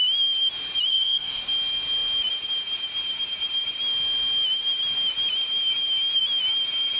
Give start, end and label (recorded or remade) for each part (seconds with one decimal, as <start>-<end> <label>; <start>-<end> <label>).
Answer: 0.0-0.9 recorded; 0.9-1.4 remade; 1.4-7.0 recorded